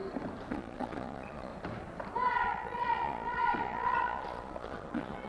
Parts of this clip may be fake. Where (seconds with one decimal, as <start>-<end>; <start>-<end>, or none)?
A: 0.5-1.5; 2.3-5.3